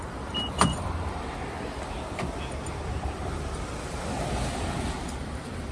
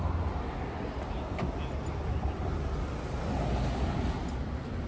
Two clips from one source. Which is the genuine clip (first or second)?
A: second